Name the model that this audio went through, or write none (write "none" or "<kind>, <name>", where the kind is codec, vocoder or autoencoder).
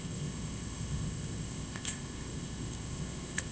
codec, ZipCodec